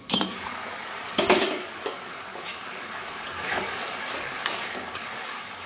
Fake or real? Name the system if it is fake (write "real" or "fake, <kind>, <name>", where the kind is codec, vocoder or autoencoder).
fake, codec, DAC